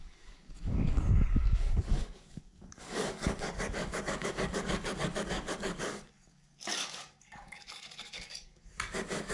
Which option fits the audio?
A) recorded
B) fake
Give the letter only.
B